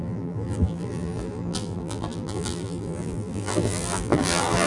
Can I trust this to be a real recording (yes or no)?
no